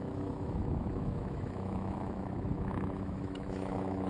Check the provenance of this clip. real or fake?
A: fake